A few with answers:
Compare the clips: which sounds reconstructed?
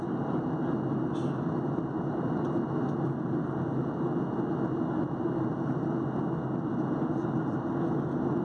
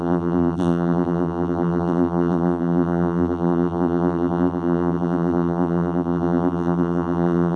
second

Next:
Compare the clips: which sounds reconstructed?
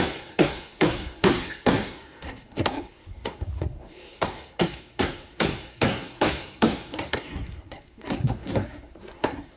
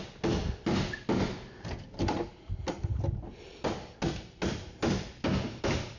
first